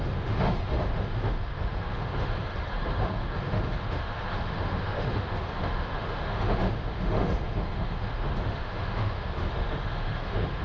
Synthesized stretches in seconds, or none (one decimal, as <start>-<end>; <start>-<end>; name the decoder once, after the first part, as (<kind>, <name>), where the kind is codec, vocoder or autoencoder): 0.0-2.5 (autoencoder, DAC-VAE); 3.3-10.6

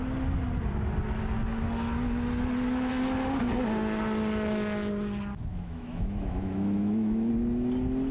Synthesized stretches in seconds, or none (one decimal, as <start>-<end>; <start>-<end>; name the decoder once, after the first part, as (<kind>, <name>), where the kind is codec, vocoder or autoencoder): 5.5-7.3 (autoencoder, DAC-VAE)

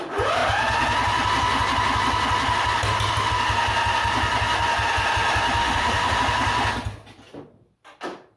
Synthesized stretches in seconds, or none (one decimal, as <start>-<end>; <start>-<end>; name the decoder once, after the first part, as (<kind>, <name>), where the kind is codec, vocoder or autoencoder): 5.6-6.2 (autoencoder, DAC-VAE)

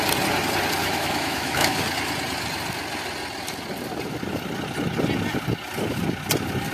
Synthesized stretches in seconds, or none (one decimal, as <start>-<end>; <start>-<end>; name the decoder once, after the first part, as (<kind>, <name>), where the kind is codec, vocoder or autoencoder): 0.8-1.8 (autoencoder, DAC-VAE)

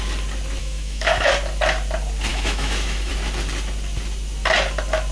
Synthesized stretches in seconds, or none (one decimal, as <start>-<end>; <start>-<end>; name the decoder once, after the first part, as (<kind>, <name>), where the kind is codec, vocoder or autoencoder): 0.6-1.3 (autoencoder, DAC-VAE); 2.3-3.1